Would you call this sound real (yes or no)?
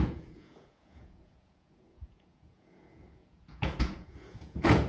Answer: no